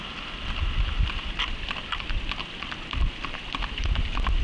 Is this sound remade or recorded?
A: recorded